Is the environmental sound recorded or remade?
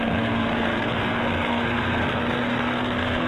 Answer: remade